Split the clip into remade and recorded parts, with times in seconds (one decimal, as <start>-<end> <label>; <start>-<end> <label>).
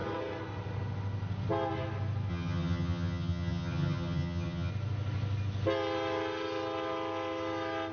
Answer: 0.0-2.3 recorded; 2.3-4.7 remade; 4.7-7.9 recorded